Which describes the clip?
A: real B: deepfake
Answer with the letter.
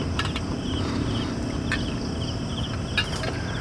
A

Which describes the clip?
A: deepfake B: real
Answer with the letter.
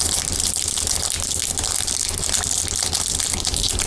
B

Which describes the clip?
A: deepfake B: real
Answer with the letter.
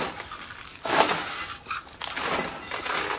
B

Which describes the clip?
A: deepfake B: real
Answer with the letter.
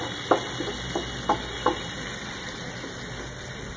B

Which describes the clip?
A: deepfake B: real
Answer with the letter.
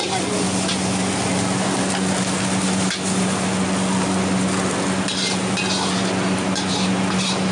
B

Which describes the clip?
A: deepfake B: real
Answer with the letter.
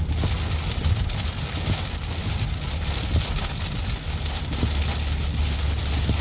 B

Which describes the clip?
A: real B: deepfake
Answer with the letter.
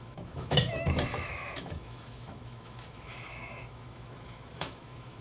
B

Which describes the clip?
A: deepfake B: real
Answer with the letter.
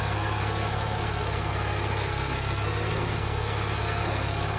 A